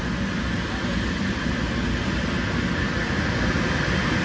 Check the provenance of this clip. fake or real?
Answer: real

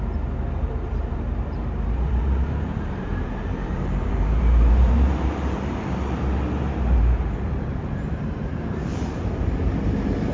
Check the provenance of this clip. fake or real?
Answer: fake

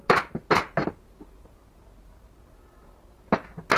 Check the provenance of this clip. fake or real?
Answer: real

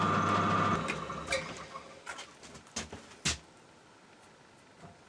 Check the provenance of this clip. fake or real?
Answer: real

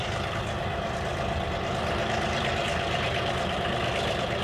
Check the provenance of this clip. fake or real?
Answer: fake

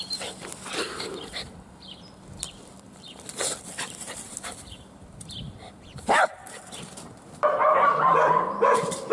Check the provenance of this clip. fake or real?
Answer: fake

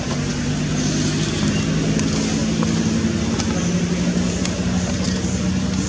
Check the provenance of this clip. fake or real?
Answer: real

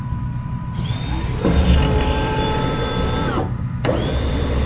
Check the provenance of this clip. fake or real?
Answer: fake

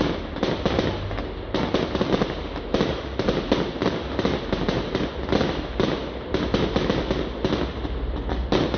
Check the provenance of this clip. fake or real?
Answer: real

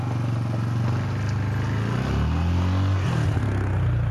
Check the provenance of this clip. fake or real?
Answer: real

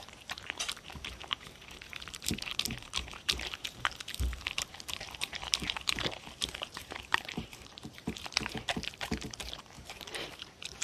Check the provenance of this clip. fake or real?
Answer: fake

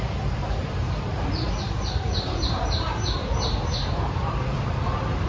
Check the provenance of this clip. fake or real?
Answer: fake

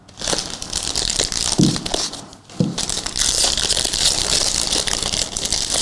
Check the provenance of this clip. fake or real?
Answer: real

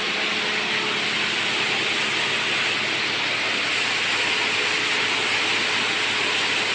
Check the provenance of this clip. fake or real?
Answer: real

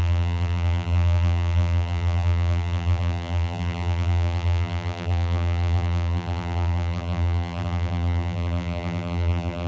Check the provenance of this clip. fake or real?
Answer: fake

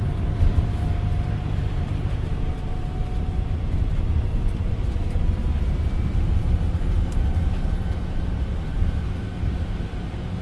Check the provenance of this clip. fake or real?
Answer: fake